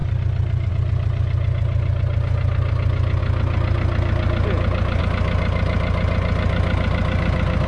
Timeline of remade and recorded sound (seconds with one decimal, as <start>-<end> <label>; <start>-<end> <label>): 0.0-7.7 recorded